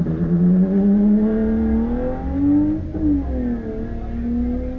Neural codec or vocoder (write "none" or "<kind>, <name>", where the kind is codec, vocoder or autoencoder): none